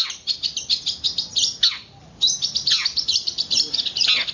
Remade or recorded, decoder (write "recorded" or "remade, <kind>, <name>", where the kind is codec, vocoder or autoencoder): recorded